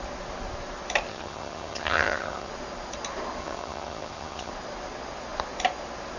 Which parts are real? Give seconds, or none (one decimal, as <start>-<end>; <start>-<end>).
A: 0.0-1.1; 2.5-3.4; 4.5-6.2